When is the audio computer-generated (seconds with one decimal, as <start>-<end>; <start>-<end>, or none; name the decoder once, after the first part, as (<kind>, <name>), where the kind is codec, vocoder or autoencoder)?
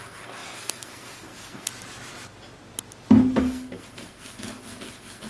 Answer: 0.0-1.7 (codec, SNAC); 3.4-5.3